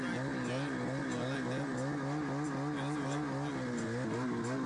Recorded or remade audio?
recorded